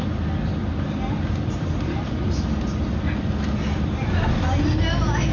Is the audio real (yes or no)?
yes